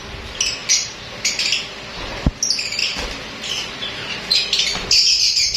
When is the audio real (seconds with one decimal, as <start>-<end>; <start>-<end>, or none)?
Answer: 0.0-5.6